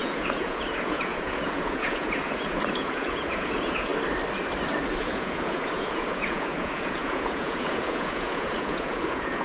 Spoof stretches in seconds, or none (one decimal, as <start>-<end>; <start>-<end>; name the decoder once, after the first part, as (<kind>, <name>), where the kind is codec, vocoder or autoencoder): 0.0-3.9 (vocoder, Vocos); 5.0-9.4